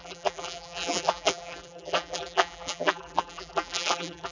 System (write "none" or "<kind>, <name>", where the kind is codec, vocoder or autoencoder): vocoder, BigVGAN v2